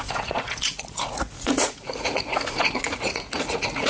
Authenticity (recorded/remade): remade